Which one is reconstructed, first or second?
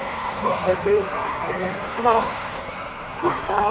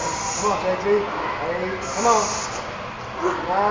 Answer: first